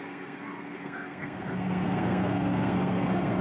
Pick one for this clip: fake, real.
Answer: fake